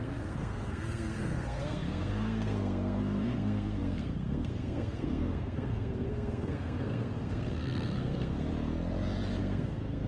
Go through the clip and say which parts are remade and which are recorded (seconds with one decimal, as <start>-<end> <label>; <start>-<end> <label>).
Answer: 0.0-8.5 remade; 8.5-9.4 recorded; 9.4-10.1 remade